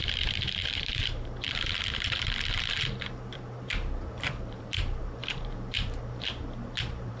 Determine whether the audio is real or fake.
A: fake